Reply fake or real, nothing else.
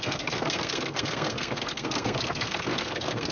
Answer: fake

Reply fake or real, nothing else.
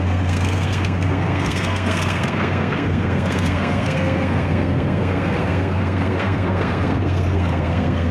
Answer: fake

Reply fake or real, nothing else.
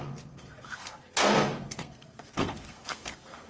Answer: fake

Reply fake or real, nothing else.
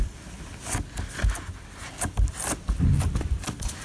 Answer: real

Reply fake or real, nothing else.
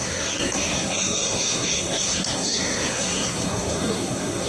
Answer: fake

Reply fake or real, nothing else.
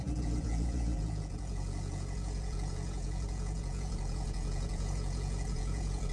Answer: fake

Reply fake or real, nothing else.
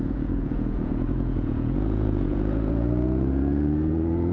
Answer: fake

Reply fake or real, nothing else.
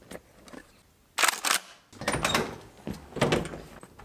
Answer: real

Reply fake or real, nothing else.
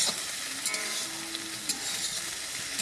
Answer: real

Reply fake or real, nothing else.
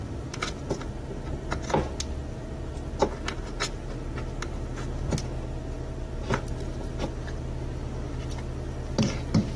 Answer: real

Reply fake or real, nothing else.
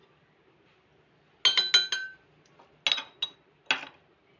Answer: real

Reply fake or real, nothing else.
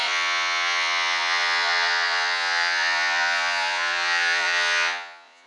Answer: fake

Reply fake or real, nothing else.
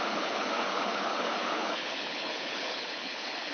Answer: fake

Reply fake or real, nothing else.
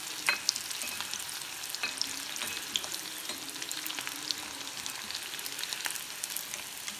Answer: real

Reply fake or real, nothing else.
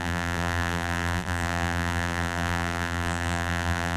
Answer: fake